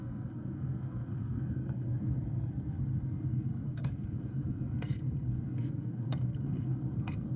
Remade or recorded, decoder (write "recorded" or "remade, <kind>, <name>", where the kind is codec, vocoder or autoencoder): remade, codec, SNAC